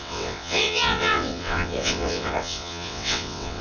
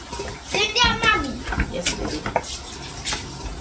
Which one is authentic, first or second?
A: second